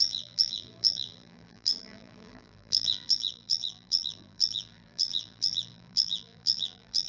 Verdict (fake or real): fake